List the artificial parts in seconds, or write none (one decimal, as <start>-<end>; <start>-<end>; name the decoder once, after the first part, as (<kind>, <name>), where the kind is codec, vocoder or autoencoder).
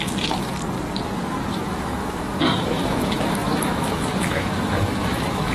0.0-0.5 (autoencoder, DAC-VAE); 1.5-5.5